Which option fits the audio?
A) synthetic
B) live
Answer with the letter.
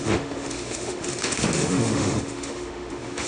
A